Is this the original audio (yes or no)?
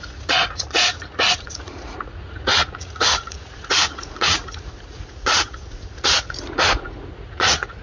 no